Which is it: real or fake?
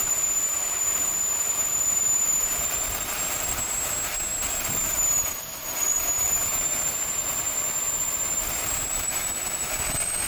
fake